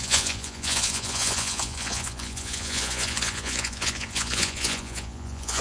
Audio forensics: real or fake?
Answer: fake